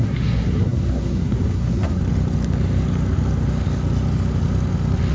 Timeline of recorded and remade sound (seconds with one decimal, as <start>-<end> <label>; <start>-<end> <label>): 0.0-2.0 remade; 2.0-5.1 recorded